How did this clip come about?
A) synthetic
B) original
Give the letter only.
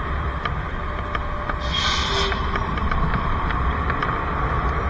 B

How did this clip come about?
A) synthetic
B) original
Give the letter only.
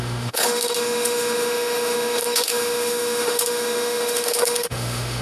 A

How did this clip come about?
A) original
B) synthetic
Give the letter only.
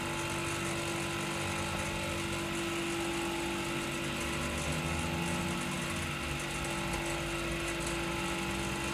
A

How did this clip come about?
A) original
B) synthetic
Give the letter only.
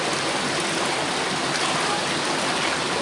A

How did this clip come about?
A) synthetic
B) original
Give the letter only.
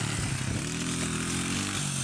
B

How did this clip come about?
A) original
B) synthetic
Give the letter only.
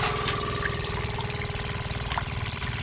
A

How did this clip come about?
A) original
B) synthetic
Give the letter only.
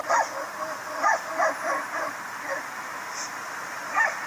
A